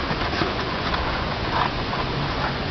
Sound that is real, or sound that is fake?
fake